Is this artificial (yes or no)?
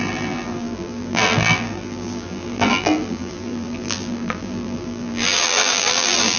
yes